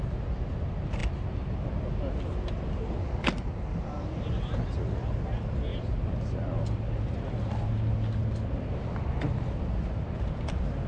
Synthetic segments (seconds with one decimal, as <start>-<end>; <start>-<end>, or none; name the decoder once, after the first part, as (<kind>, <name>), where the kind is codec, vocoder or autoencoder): none